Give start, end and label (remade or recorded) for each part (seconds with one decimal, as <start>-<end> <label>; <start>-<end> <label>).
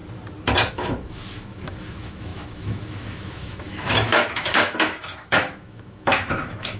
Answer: 0.0-0.7 recorded; 0.7-6.8 remade